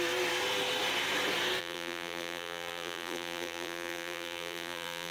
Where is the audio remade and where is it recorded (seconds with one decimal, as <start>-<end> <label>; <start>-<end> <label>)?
0.0-1.6 recorded; 1.6-5.1 remade